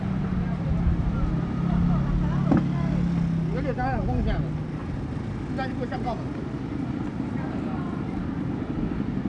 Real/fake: real